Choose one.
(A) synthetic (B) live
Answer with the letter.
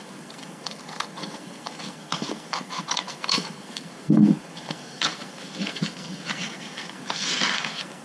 A